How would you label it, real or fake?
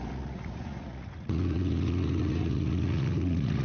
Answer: fake